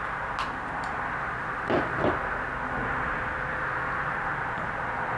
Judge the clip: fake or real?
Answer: real